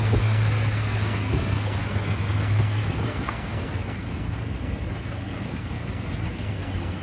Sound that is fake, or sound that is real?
fake